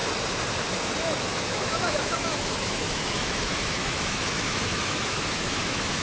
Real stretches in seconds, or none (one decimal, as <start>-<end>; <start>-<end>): 0.0-0.9